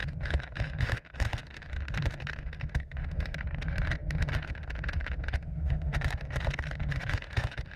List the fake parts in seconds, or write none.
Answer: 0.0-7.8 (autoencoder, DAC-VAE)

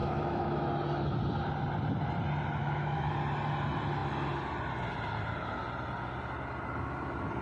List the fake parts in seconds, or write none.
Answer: 0.0-0.7 (autoencoder, DAC-VAE); 2.6-3.1